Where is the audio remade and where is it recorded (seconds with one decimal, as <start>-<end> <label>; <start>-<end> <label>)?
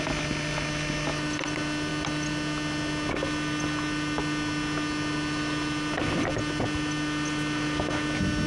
0.0-8.5 recorded